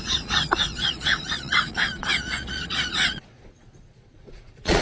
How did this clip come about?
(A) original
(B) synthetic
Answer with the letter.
B